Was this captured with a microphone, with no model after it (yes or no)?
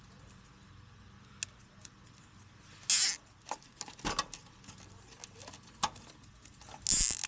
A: yes